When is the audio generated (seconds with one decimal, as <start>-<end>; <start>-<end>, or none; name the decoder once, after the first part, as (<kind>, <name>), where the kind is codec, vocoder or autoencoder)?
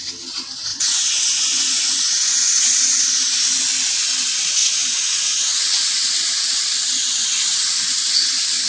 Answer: 0.7-3.0 (vocoder, Vocos); 4.6-6.4